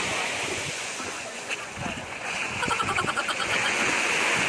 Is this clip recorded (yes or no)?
no